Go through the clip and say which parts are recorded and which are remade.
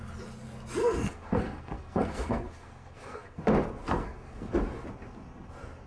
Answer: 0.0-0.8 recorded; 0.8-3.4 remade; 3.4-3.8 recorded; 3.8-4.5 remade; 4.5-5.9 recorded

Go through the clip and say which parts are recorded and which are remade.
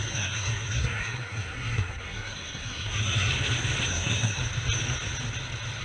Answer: 0.0-3.3 remade; 3.3-3.9 recorded; 3.9-4.4 remade; 4.4-5.8 recorded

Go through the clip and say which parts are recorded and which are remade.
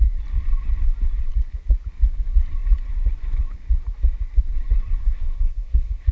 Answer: 0.0-5.0 recorded; 5.0-6.1 remade